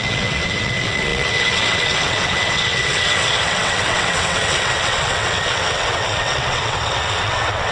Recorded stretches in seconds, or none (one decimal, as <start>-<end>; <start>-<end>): none